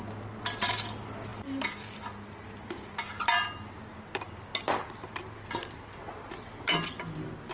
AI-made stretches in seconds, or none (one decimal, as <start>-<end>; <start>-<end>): none

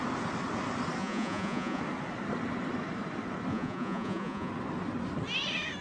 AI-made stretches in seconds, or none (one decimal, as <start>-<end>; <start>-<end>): 1.0-1.8; 3.5-4.5

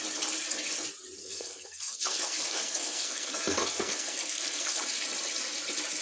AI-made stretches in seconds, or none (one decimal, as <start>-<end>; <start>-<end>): 1.2-4.8

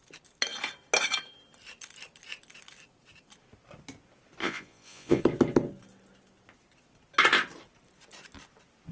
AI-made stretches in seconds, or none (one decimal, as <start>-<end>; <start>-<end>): 4.4-5.2